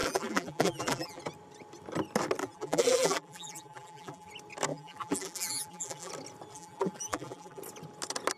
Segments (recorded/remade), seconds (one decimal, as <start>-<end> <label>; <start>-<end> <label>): 0.0-1.2 remade; 1.2-2.4 recorded; 2.4-4.3 remade; 4.3-4.7 recorded; 4.7-6.1 remade; 6.1-6.5 recorded; 6.5-7.6 remade; 7.6-8.4 recorded